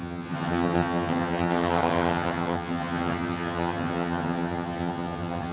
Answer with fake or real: fake